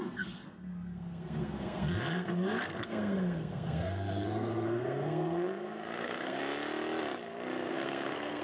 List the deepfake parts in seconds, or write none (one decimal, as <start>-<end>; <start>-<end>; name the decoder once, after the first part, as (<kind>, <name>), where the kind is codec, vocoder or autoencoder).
0.0-6.4 (codec, SNAC); 7.7-8.4

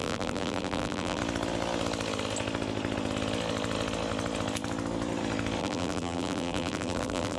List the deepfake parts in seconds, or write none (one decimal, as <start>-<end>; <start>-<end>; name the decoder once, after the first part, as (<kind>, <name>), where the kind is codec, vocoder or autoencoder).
0.0-1.2 (vocoder, BigVGAN v2); 5.6-7.4